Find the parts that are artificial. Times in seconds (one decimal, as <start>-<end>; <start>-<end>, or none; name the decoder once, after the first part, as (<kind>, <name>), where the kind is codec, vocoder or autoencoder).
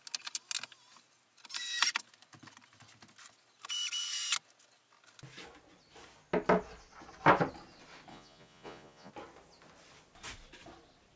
8.1-9.1 (vocoder, Vocos)